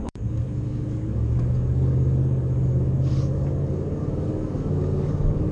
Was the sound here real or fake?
fake